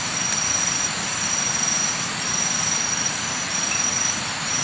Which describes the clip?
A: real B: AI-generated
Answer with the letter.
B